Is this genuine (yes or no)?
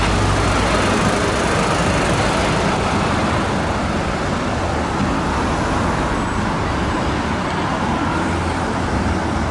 yes